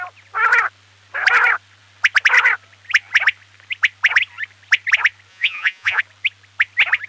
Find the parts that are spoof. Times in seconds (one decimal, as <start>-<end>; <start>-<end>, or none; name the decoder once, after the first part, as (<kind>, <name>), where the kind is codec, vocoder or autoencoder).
5.3-6.0 (vocoder, Vocos)